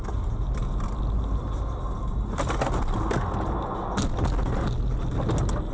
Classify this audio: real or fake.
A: real